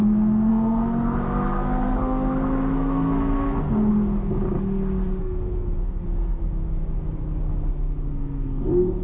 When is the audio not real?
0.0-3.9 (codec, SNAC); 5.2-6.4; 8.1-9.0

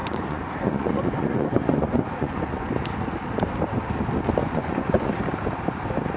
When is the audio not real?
0.0-2.7 (vocoder, Vocos); 4.4-5.1

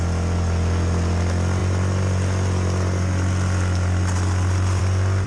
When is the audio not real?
none

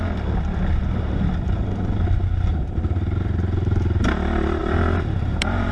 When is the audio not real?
4.6-5.7 (vocoder, BigVGAN v2)

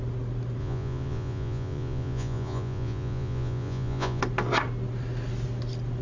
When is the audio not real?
0.6-4.2 (vocoder, Vocos)